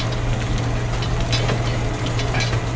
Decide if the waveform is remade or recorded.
recorded